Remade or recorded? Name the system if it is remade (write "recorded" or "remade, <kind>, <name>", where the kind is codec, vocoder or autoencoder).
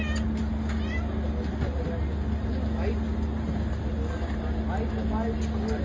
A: recorded